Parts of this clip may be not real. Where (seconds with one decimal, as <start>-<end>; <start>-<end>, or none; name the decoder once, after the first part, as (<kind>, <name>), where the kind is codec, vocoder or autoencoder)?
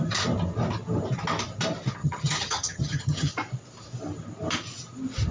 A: 2.0-3.3 (vocoder, HiFi-GAN)